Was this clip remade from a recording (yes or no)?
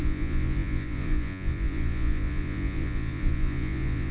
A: yes